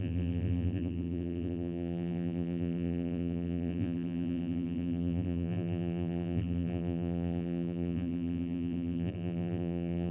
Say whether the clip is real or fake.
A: fake